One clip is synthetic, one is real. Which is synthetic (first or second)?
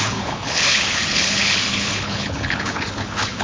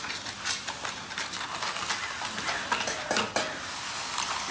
first